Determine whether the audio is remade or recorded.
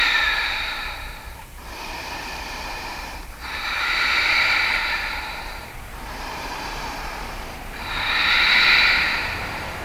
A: remade